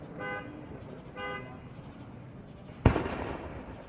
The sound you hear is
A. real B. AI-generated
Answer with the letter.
A